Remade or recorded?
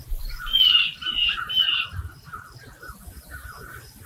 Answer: recorded